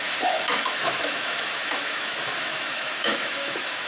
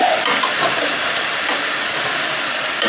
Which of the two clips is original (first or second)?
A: second